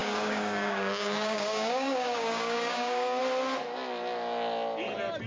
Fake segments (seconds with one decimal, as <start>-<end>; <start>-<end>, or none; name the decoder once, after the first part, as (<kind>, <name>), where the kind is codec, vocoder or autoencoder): 0.0-3.2 (codec, DAC)